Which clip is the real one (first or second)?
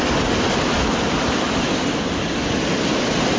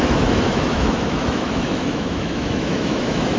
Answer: first